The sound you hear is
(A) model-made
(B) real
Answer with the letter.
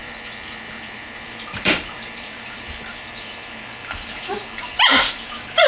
A